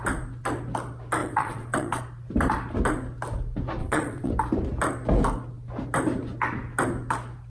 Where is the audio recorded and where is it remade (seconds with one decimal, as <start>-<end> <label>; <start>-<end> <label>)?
0.0-1.2 recorded; 1.2-2.0 remade; 2.0-3.8 recorded; 3.8-4.3 remade; 4.3-7.5 recorded

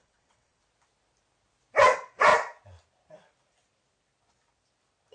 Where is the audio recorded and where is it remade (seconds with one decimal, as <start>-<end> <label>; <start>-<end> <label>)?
0.0-0.6 remade; 0.6-1.8 recorded; 1.8-2.3 remade; 2.3-5.1 recorded